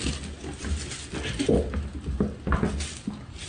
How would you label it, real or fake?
real